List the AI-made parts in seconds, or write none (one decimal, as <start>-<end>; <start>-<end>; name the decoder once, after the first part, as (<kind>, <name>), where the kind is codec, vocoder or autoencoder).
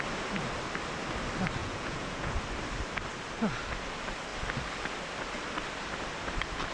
1.6-2.3 (vocoder, Vocos)